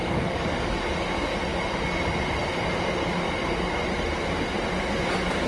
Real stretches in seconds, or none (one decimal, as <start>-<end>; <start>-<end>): 0.8-5.5